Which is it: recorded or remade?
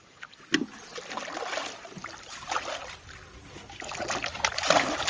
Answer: recorded